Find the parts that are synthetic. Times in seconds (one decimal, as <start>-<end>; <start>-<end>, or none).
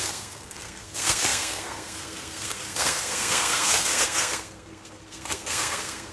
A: 0.0-6.1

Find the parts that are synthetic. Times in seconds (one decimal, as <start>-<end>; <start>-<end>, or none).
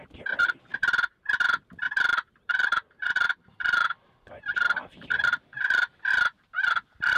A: 2.1-4.3; 4.9-5.9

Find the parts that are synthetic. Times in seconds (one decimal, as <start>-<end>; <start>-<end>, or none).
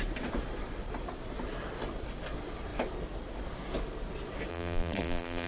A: 4.5-5.5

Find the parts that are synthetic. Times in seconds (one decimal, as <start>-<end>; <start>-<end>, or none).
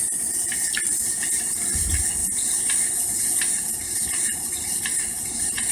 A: 2.2-5.7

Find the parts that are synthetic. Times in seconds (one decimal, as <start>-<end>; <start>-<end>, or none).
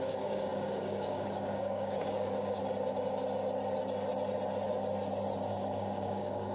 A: 0.0-2.6; 5.5-6.5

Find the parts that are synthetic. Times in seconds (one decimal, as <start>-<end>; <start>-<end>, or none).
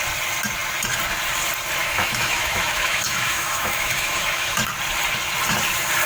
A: 1.8-4.6